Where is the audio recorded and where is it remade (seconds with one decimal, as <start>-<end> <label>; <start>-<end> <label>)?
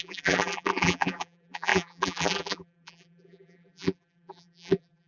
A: 0.0-5.1 remade